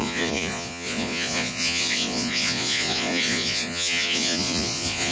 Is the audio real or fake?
fake